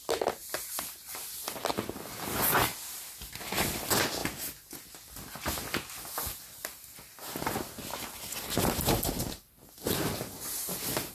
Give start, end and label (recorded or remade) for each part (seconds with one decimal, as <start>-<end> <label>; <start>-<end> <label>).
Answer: 0.0-11.1 recorded